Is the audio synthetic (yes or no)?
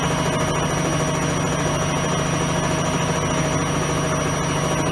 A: no